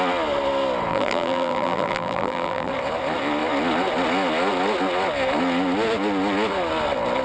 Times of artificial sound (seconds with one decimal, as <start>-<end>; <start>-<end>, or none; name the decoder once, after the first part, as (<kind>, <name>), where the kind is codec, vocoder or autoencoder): 0.9-2.7 (vocoder, BigVGAN v2)